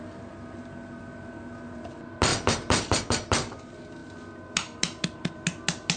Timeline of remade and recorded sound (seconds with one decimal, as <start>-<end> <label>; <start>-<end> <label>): 0.0-6.0 recorded